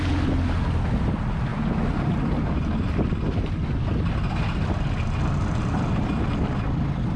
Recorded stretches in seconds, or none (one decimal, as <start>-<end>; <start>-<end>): 0.0-7.2